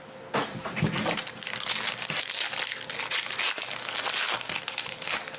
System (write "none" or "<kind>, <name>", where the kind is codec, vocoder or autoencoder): none